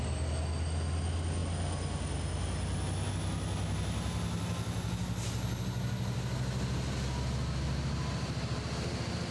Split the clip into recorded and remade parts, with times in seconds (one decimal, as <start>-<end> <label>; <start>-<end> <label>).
0.0-9.3 recorded